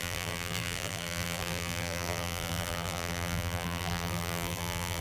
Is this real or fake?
fake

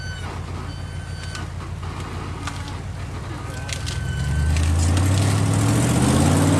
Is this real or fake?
real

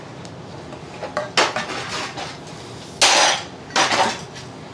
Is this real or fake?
real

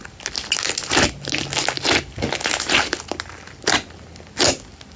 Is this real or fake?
real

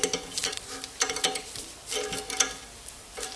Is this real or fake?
real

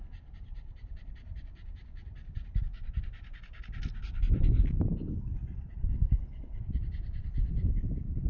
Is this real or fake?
real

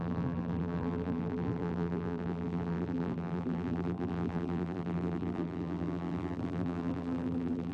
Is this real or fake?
fake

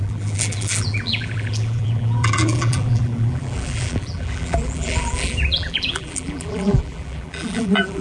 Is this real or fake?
fake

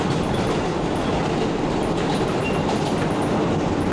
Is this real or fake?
fake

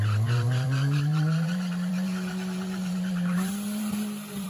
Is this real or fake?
fake